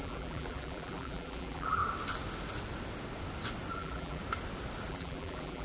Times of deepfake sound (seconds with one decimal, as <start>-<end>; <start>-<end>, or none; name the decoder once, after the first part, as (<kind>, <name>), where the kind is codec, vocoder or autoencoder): 0.0-1.8 (vocoder, BigVGAN v2); 3.7-4.2; 4.9-5.6